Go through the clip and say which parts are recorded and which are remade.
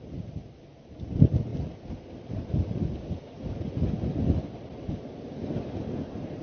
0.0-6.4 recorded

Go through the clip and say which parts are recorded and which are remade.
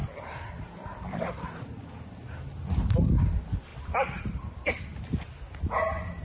0.0-3.7 recorded; 3.7-4.8 remade; 4.8-6.2 recorded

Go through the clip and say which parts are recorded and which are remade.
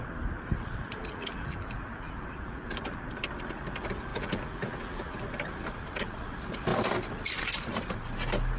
0.0-1.0 recorded; 1.0-2.8 remade; 2.8-4.1 recorded; 4.1-5.2 remade; 5.2-8.6 recorded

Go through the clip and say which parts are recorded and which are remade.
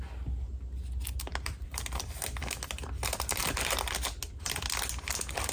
0.0-1.3 recorded; 1.3-2.2 remade; 2.2-5.5 recorded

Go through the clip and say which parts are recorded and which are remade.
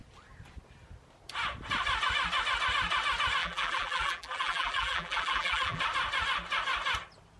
0.0-3.4 recorded; 3.4-5.8 remade; 5.8-7.4 recorded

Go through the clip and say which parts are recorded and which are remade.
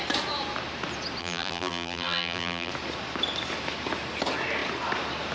0.0-1.2 recorded; 1.2-2.7 remade; 2.7-5.3 recorded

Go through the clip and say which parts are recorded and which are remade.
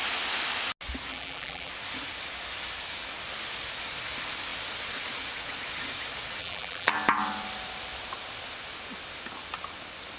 0.0-1.1 recorded; 1.1-1.7 remade; 1.7-6.4 recorded; 6.4-6.9 remade; 6.9-10.2 recorded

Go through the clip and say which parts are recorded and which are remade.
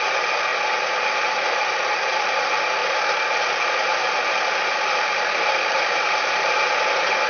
0.0-7.3 recorded